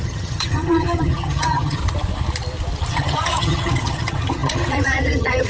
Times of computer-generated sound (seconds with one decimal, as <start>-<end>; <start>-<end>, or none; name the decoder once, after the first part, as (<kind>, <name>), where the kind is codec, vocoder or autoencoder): 0.0-1.8 (vocoder, HiFi-GAN); 2.9-5.5